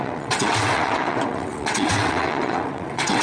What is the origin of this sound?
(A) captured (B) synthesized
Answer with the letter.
B